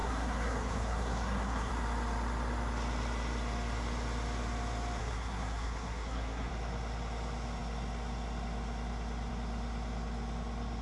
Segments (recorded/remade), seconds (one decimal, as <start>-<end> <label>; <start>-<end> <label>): 0.0-1.7 remade; 1.7-5.0 recorded; 5.0-6.5 remade; 6.5-10.8 recorded